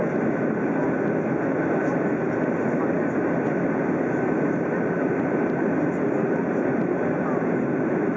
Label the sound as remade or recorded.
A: recorded